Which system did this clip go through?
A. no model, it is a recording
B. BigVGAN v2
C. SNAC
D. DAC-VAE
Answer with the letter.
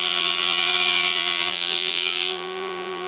B